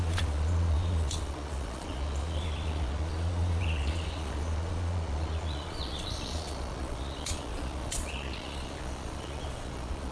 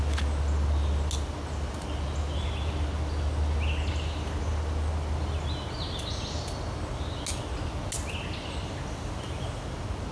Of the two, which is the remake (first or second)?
first